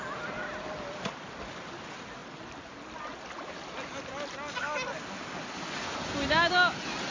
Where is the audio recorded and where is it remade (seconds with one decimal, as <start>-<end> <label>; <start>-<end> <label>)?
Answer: 0.0-7.1 recorded